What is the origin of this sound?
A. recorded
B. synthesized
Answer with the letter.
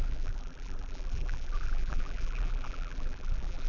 B